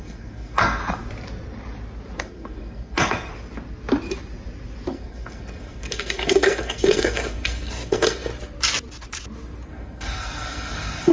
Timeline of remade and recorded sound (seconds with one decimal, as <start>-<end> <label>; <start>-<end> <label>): 0.0-0.8 remade; 0.8-2.2 recorded; 2.2-3.3 remade; 3.3-4.9 recorded; 4.9-8.3 remade; 8.3-9.7 recorded; 9.7-11.1 remade